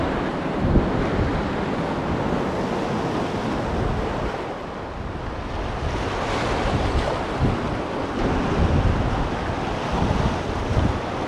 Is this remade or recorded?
recorded